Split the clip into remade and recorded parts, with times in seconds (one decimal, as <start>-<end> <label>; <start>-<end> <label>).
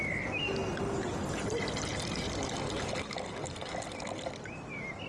0.0-5.1 recorded